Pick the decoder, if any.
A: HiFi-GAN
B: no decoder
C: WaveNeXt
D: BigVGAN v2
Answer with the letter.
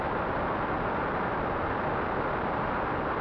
B